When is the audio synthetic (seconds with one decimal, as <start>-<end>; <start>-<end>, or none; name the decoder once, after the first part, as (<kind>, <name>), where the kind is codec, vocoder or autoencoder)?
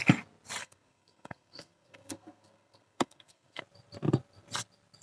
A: 0.6-3.6 (codec, SNAC)